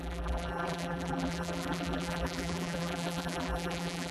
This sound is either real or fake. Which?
fake